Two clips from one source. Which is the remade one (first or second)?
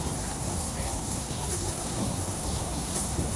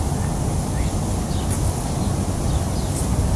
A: first